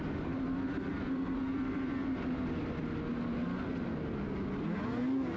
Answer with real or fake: real